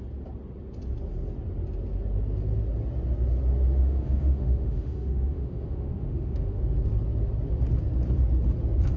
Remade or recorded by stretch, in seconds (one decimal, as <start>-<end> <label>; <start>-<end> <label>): 0.0-3.8 recorded; 3.8-6.6 remade; 6.6-9.0 recorded